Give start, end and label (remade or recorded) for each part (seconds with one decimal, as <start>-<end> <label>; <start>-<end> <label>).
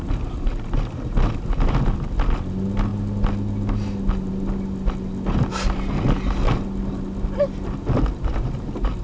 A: 0.0-9.0 recorded